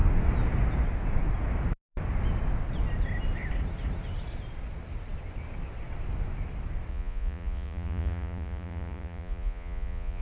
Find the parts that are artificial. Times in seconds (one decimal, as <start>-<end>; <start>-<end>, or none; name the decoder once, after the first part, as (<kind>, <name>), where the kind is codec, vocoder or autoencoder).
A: 6.9-10.2 (vocoder, Vocos)